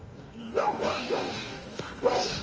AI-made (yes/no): yes